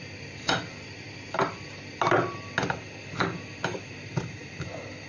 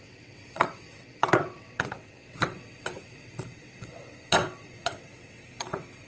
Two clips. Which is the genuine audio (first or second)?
first